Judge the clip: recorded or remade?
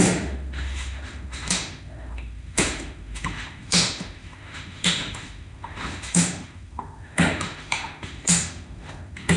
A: remade